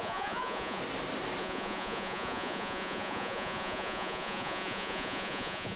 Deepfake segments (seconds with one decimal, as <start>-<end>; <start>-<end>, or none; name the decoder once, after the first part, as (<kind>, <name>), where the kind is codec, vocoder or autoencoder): 0.0-0.8 (vocoder, Vocos); 1.4-5.8